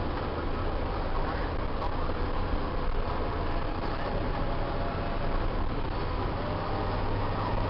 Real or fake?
real